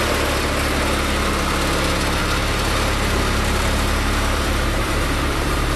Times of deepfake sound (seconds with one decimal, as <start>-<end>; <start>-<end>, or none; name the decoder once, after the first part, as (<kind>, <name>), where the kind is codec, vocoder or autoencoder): 2.2-5.8 (vocoder, BigVGAN v2)